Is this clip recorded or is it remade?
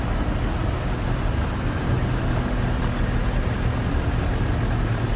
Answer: recorded